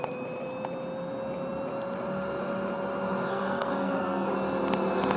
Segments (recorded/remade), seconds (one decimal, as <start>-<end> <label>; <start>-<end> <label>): 0.0-3.3 recorded; 3.3-4.3 remade; 4.3-5.2 recorded

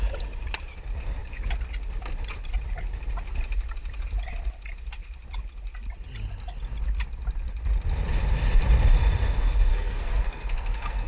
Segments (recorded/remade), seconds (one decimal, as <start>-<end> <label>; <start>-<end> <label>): 0.0-9.7 recorded; 9.7-11.1 remade

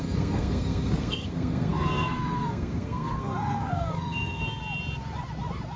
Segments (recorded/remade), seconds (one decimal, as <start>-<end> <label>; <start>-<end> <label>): 0.0-4.4 remade; 4.4-5.8 recorded

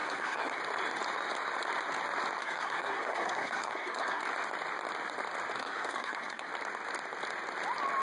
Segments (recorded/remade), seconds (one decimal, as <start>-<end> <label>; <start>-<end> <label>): 0.0-0.6 remade; 0.6-2.4 recorded; 2.4-4.2 remade; 4.2-5.6 recorded; 5.6-6.5 remade; 6.5-8.0 recorded

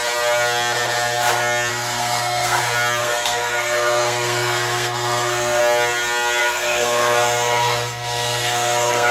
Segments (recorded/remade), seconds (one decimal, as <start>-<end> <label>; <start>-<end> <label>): 0.0-1.7 recorded; 1.7-2.6 remade; 2.6-3.0 recorded; 3.0-5.6 remade; 5.6-6.4 recorded; 6.4-9.1 remade

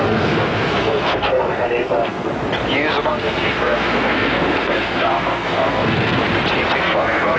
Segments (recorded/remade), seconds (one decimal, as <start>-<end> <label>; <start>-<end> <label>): 0.0-2.3 remade; 2.3-3.0 recorded; 3.0-6.2 remade; 6.2-6.8 recorded; 6.8-7.4 remade